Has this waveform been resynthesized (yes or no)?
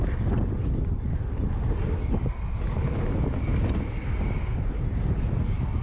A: no